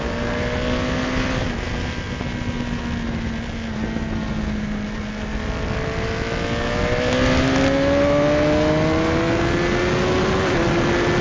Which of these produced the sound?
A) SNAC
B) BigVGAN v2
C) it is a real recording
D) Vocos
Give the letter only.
C